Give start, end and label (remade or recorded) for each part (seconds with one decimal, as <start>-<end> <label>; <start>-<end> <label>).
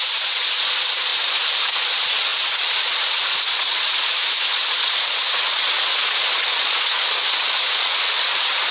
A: 0.0-1.1 remade; 1.1-1.7 recorded; 1.7-8.7 remade